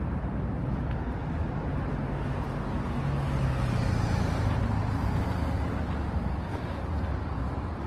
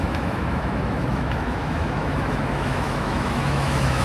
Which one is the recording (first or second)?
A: first